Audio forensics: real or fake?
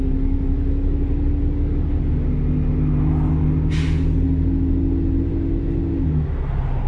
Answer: real